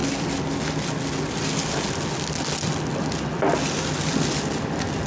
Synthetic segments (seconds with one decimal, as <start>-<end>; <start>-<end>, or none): none